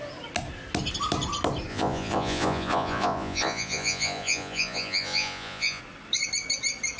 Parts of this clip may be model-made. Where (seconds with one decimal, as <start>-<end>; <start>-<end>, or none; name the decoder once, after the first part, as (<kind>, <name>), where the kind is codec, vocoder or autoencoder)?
1.7-5.8 (vocoder, Vocos)